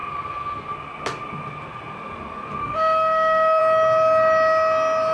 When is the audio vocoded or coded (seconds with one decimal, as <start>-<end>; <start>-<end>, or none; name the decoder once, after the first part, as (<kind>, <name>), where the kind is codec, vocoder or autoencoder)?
2.6-3.6 (autoencoder, DAC-VAE)

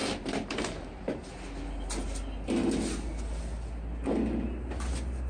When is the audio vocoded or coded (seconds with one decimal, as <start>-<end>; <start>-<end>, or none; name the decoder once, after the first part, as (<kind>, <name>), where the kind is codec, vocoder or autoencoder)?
none

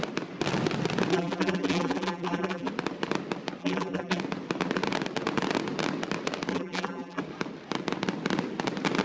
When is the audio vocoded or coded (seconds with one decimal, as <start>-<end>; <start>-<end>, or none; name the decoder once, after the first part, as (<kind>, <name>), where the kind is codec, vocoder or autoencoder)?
1.1-2.7 (vocoder, BigVGAN v2); 3.6-4.2; 6.5-7.2

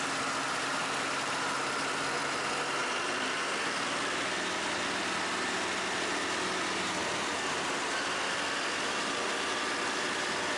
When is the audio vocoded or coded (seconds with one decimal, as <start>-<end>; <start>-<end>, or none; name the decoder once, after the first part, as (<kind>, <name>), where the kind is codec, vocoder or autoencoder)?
none

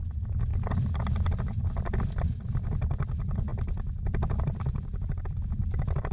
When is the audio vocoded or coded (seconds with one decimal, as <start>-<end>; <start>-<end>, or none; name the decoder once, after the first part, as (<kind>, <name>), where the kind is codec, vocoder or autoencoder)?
none

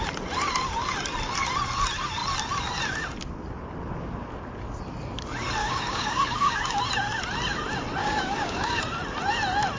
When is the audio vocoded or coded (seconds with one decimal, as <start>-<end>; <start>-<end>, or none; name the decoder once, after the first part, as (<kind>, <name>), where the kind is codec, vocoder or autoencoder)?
5.6-6.8 (codec, DAC); 8.0-8.8

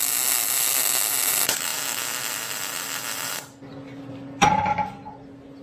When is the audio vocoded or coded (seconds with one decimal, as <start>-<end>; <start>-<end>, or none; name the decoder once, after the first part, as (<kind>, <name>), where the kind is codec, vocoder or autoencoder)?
none